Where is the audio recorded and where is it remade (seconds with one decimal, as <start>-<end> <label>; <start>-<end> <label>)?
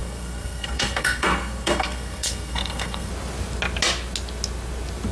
0.0-3.1 remade; 3.1-5.1 recorded